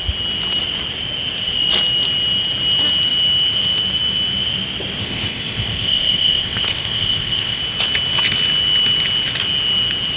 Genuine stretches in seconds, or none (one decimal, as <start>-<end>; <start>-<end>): 0.0-5.0; 7.6-10.2